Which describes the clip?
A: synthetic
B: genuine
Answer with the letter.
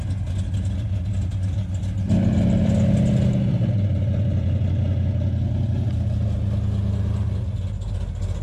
B